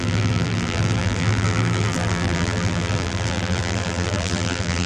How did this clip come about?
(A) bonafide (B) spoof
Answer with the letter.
B